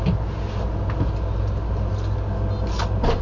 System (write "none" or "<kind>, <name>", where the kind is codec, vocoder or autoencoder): none